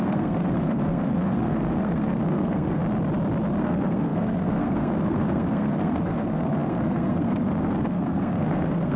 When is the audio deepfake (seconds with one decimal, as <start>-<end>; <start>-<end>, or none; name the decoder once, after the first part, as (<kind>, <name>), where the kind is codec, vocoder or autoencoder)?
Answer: 0.0-2.8 (codec, SNAC); 3.6-9.0